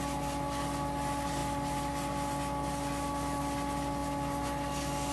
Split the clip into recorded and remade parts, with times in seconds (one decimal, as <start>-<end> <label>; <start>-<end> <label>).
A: 0.0-5.1 recorded